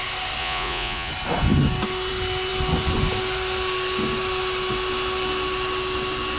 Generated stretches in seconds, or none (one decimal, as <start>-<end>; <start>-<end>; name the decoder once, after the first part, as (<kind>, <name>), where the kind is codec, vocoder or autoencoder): 0.4-1.1 (vocoder, Vocos)

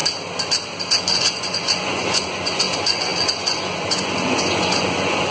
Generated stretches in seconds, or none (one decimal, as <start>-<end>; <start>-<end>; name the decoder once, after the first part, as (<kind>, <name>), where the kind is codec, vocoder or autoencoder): 1.0-5.3 (vocoder, Vocos)

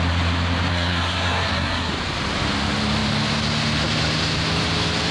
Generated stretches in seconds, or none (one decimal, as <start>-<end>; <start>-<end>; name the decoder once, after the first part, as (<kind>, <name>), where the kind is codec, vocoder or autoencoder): 0.7-1.9 (codec, SNAC)

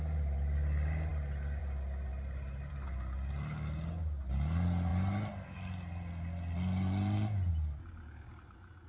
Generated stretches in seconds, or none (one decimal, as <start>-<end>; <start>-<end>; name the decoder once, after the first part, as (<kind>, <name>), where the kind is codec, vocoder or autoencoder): 2.1-2.7 (vocoder, BigVGAN v2)

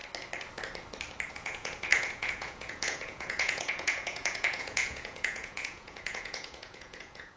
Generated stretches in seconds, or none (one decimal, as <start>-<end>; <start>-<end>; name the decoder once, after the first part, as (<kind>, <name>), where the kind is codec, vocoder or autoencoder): 1.3-7.4 (vocoder, Vocos)